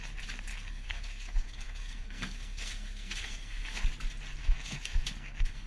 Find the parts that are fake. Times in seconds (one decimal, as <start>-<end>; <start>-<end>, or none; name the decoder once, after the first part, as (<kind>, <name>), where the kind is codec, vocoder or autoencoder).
0.5-3.8 (codec, SNAC); 4.4-5.7